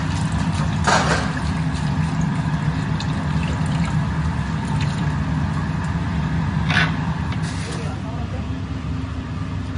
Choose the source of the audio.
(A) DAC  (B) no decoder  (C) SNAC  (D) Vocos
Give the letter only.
B